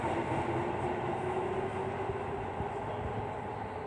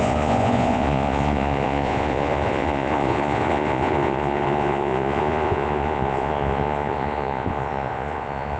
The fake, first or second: second